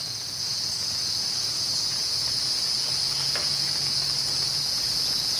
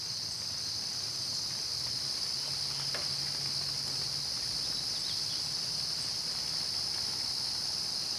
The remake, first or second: first